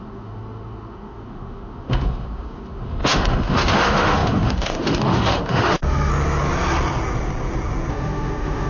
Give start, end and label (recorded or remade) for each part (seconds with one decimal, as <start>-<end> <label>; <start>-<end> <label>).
0.0-6.1 remade; 6.1-7.9 recorded; 7.9-8.7 remade